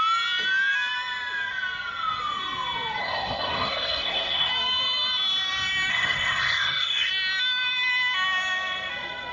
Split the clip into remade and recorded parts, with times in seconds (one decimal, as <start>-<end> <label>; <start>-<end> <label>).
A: 0.0-3.0 recorded; 3.0-4.5 remade; 4.5-5.9 recorded; 5.9-7.1 remade; 7.1-9.3 recorded